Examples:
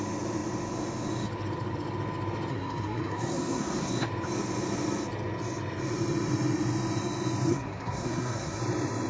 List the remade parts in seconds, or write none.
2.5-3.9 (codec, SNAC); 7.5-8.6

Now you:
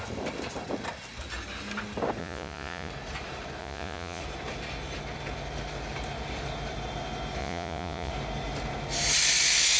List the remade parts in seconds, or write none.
2.2-2.9 (vocoder, Vocos); 3.6-4.2; 7.4-8.1

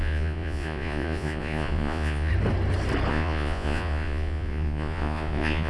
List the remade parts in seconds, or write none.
0.0-2.3 (vocoder, Vocos); 3.1-5.7

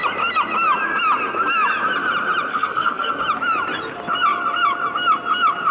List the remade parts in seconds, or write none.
2.5-3.1 (codec, SNAC)

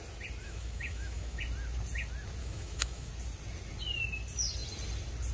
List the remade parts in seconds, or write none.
0.4-1.4 (autoencoder, DAC-VAE); 2.4-3.1

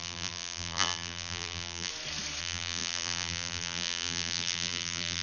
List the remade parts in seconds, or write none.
0.0-1.9 (vocoder, BigVGAN v2); 2.4-5.2

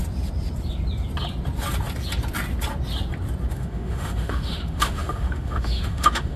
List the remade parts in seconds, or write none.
3.5-6.4 (autoencoder, DAC-VAE)

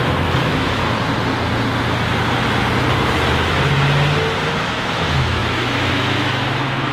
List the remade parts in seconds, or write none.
0.0-0.8 (autoencoder, DAC-VAE); 4.5-6.9